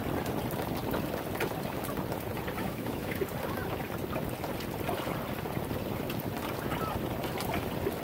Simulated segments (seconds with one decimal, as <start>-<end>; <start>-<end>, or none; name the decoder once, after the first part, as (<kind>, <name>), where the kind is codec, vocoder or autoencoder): 2.6-3.2 (autoencoder, DAC-VAE)

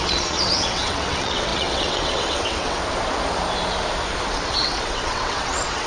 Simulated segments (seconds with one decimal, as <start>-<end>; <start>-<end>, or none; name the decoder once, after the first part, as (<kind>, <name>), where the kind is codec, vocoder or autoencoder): 0.0-2.8 (vocoder, WaveNeXt); 4.3-5.9